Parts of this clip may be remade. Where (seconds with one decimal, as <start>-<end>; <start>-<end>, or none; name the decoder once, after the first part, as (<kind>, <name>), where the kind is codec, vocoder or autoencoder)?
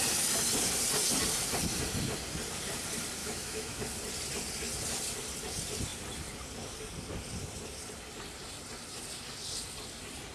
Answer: 3.2-3.8 (autoencoder, DAC-VAE)